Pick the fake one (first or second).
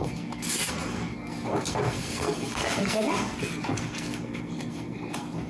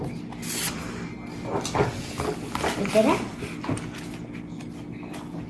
first